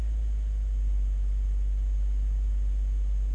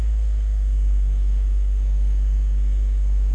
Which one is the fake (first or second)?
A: second